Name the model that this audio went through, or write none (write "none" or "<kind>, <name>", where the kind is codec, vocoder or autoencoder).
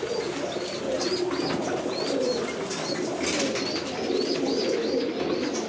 none